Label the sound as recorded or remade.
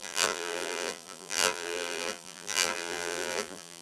remade